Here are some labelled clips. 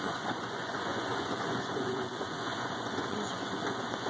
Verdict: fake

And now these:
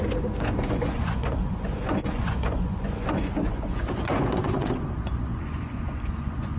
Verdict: fake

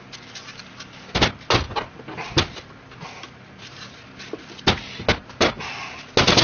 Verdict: real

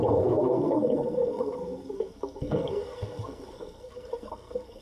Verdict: fake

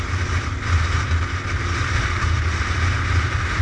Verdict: real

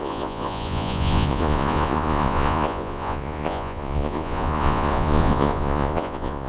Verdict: fake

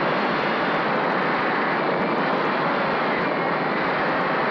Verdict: real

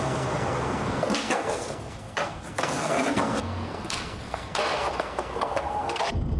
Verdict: fake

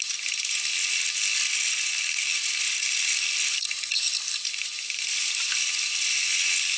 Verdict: real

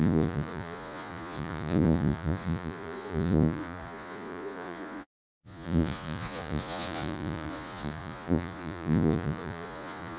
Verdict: fake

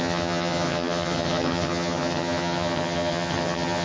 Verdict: fake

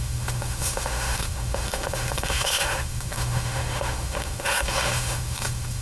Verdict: fake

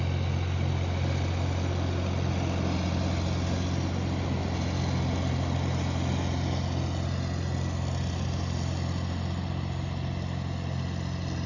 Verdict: real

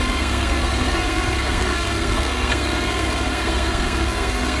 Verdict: fake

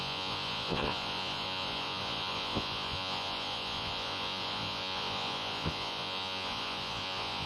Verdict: fake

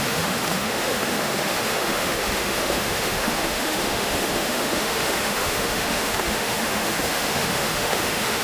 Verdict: fake